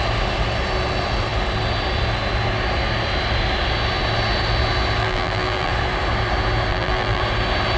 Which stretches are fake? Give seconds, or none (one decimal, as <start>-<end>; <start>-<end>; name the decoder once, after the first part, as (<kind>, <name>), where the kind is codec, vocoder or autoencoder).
5.0-5.7 (vocoder, BigVGAN v2); 6.7-7.2